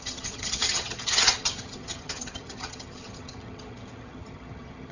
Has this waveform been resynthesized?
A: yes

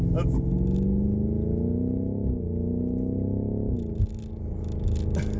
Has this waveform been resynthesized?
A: no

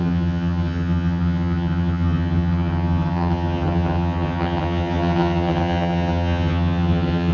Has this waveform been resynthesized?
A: yes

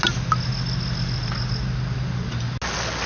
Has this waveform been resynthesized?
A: no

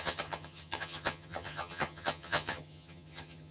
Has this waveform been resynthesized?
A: yes